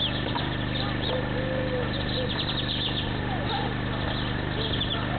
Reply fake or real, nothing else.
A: real